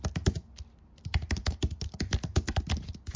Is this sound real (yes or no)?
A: yes